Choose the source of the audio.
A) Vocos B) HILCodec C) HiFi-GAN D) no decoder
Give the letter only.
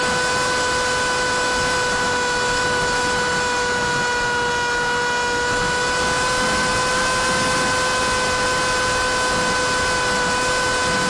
D